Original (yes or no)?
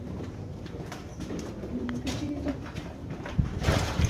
no